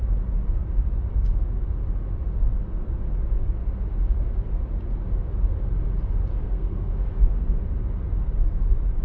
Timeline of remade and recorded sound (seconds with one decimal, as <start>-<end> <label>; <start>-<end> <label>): 0.0-6.3 recorded; 6.3-7.6 remade; 7.6-9.0 recorded